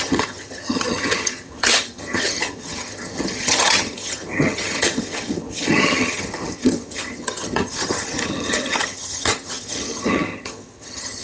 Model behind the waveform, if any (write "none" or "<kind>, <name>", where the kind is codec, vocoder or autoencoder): vocoder, HiFi-GAN